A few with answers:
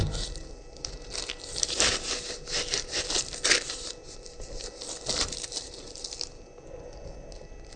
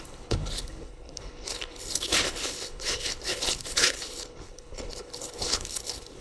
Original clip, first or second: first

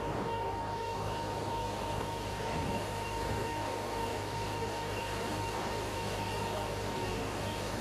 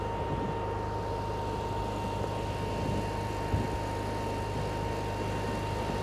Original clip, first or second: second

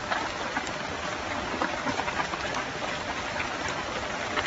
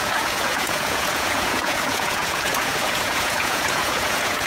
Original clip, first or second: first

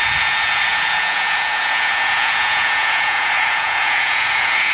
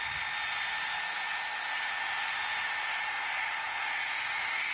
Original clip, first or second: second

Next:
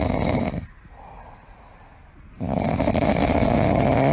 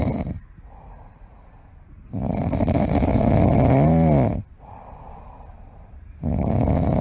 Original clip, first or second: first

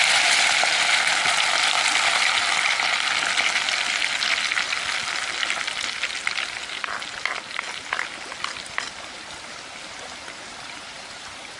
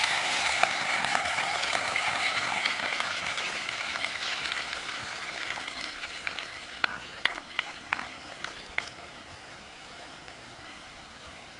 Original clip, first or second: first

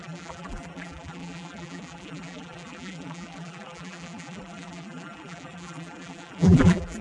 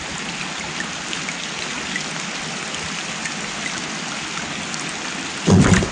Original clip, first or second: second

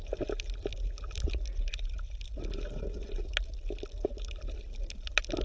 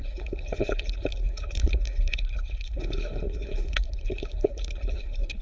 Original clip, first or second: first